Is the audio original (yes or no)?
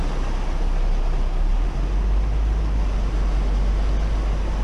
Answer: yes